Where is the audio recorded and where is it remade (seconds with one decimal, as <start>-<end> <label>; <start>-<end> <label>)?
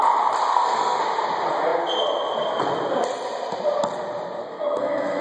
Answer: 0.0-0.5 recorded; 0.5-1.0 remade; 1.0-4.4 recorded; 4.4-5.2 remade